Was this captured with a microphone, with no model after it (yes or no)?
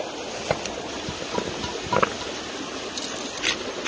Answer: yes